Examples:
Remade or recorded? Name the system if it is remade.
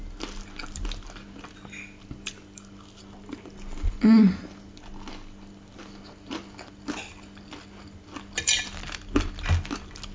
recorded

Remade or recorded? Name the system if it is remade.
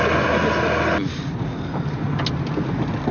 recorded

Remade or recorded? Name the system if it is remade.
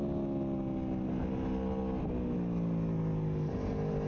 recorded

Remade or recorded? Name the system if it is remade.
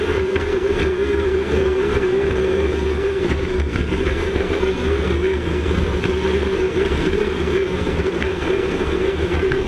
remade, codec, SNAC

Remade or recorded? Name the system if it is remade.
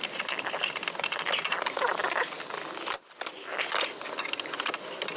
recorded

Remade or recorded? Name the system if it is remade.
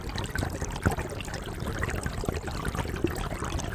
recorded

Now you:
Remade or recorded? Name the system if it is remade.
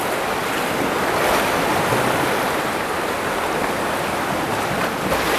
recorded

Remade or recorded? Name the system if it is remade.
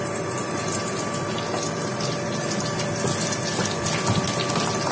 recorded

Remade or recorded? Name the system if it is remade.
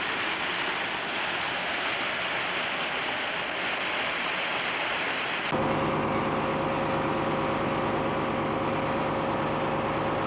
recorded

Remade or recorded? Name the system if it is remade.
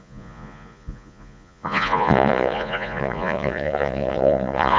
remade, vocoder, Vocos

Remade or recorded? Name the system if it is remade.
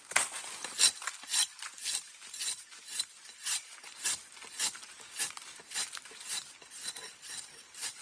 remade, vocoder, BigVGAN v2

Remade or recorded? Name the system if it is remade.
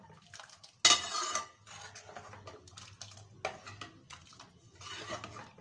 recorded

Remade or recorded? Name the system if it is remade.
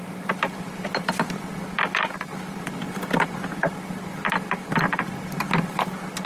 recorded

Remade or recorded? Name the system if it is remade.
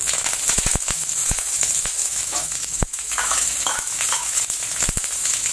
remade, autoencoder, DAC-VAE